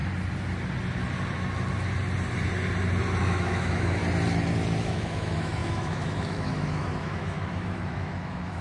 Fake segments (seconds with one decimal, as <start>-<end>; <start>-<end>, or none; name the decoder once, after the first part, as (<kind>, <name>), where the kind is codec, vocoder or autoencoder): 3.2-4.0 (autoencoder, DAC-VAE); 4.8-8.6